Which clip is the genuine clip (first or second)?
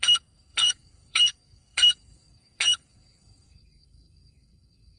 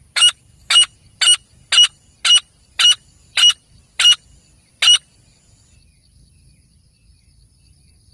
second